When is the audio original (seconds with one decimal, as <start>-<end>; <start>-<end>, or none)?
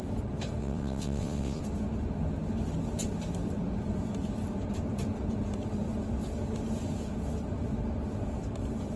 0.0-0.6; 1.6-9.0